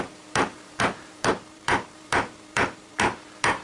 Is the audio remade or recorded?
remade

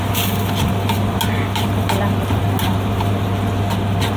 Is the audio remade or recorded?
recorded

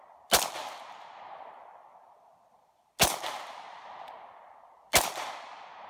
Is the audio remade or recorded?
recorded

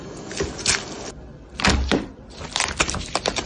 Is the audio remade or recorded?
recorded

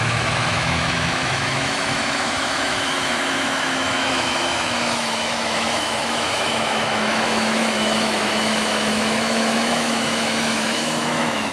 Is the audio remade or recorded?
remade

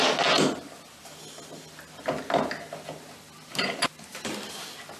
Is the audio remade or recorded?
recorded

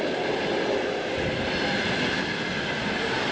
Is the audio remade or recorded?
remade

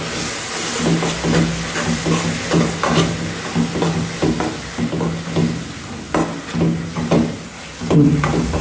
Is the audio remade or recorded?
recorded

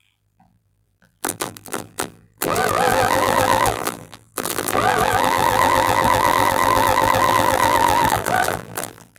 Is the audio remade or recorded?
remade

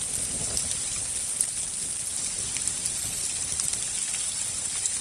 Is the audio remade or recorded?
recorded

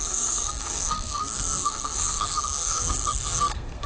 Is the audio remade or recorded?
remade